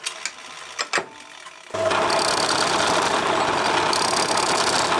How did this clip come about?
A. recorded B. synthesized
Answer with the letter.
A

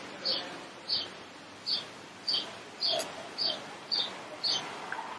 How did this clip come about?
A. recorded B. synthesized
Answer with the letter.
A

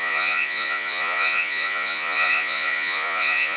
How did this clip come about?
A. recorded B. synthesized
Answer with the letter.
B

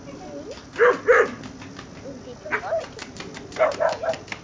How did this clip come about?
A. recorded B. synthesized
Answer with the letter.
A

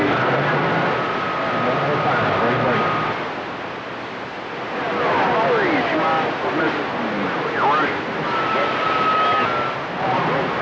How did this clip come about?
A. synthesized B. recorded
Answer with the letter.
B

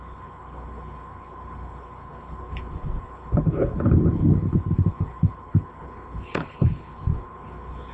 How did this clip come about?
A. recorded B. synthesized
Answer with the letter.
B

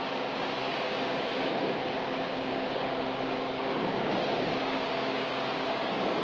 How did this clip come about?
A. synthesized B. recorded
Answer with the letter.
A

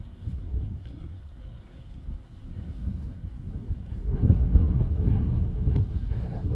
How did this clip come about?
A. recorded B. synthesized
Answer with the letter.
B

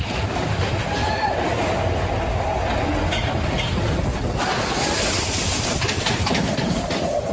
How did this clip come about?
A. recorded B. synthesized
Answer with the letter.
A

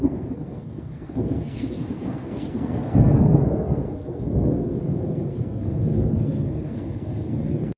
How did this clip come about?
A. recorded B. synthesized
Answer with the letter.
B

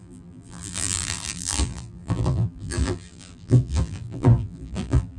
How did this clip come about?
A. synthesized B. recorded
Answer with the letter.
A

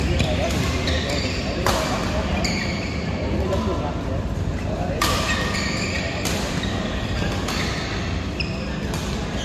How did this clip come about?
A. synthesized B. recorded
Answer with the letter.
A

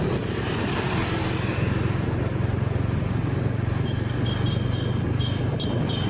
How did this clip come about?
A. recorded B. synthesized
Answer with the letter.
A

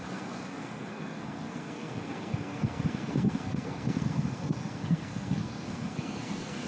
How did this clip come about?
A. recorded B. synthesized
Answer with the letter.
B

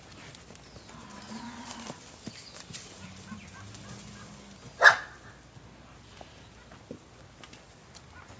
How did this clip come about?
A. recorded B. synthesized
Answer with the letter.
A